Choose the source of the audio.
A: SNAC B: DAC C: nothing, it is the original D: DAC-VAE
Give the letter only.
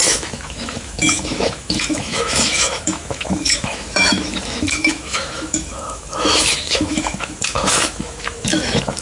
D